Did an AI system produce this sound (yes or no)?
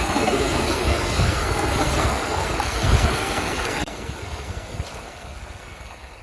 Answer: yes